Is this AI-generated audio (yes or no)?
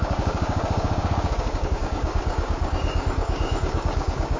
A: yes